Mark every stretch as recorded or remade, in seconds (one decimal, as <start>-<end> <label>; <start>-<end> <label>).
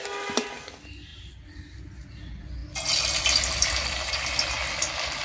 0.0-5.2 recorded